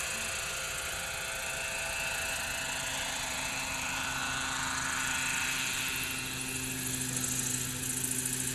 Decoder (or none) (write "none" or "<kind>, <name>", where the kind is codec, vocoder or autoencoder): none